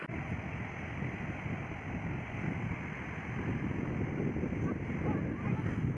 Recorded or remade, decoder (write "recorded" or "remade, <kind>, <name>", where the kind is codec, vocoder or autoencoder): recorded